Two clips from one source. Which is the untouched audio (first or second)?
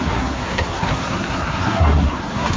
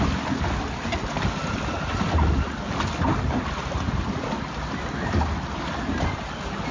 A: second